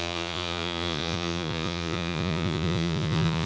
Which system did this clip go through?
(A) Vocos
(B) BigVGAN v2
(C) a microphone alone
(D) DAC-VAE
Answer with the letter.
A